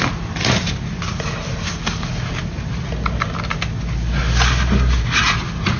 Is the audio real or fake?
real